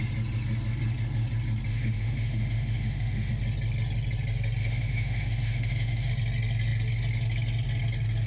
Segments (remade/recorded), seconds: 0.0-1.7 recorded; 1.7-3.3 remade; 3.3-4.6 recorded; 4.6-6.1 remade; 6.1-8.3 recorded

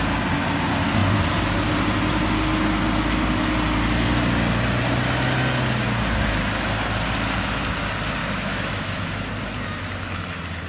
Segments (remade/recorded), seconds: 0.0-8.2 recorded; 8.2-9.0 remade; 9.0-10.7 recorded